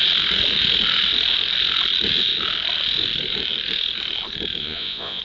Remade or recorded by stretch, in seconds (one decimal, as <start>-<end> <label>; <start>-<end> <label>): 0.0-4.6 recorded; 4.6-5.2 remade